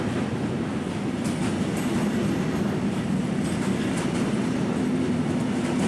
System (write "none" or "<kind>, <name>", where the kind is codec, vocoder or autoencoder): none